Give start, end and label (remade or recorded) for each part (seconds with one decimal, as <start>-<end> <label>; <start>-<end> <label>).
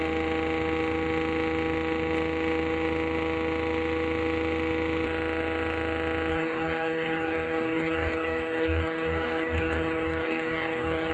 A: 0.0-6.3 recorded; 6.3-11.1 remade